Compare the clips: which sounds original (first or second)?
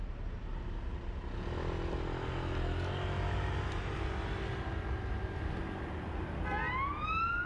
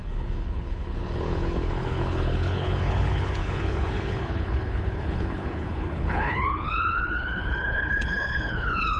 first